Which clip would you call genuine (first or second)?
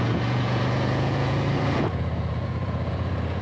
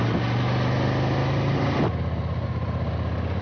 second